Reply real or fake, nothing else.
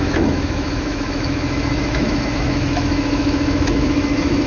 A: fake